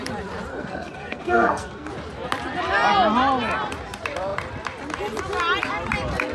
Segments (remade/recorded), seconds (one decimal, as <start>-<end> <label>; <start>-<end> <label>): 0.0-0.5 recorded; 0.5-1.9 remade; 1.9-6.3 recorded